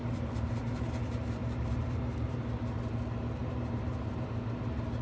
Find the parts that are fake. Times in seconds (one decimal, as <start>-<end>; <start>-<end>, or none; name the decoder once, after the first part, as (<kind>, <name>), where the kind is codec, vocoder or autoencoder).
0.0-2.4 (vocoder, BigVGAN v2); 3.4-4.3